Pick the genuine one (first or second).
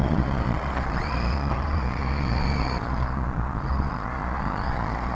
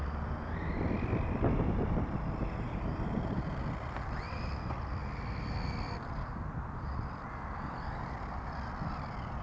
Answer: second